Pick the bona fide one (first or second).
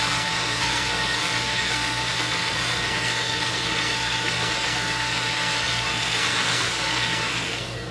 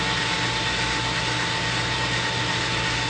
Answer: second